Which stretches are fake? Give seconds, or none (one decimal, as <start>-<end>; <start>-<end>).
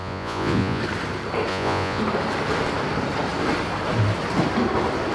0.0-0.8; 1.5-2.0